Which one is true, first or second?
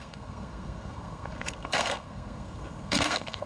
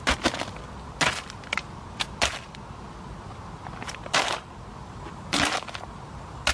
second